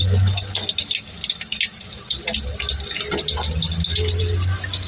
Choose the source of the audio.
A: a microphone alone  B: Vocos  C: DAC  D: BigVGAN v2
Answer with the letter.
A